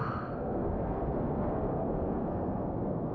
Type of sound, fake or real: fake